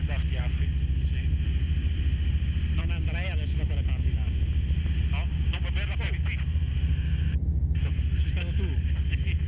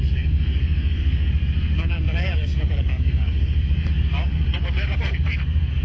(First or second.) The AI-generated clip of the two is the second